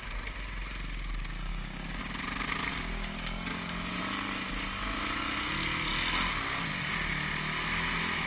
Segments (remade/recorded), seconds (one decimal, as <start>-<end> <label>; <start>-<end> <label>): 0.0-1.5 recorded; 1.5-2.0 remade; 2.0-2.7 recorded; 2.7-4.0 remade; 4.0-8.3 recorded